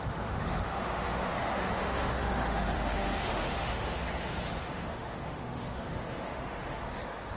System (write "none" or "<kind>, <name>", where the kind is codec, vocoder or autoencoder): autoencoder, DAC-VAE